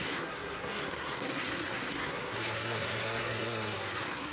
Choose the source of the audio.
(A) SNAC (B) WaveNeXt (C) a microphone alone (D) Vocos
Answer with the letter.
A